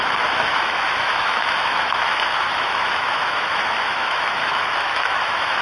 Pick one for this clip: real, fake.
fake